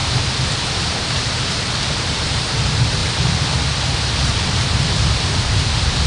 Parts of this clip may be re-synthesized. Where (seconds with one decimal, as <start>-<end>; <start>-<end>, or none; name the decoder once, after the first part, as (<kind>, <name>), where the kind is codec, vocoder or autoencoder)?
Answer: 0.0-3.0 (vocoder, BigVGAN v2); 5.1-6.1